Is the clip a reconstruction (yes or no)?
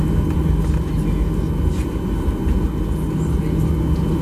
no